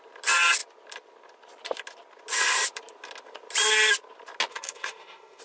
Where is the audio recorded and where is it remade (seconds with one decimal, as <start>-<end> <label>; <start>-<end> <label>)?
0.0-4.5 recorded; 4.5-5.4 remade